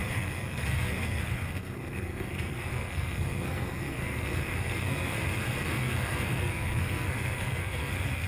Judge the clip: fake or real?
fake